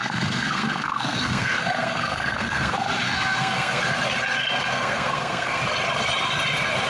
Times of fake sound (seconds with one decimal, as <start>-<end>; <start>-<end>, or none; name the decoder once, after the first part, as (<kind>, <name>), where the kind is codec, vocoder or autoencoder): 0.0-3.8 (codec, SNAC); 4.4-5.6